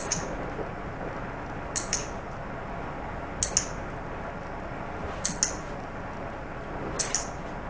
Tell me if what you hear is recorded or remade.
recorded